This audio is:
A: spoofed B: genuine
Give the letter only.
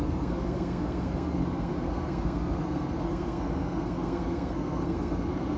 A